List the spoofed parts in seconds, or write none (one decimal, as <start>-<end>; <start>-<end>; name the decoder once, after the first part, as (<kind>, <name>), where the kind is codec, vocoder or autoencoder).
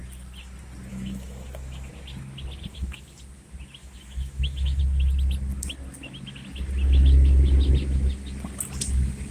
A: 0.9-1.9 (autoencoder, DAC-VAE); 2.7-3.2; 3.8-4.8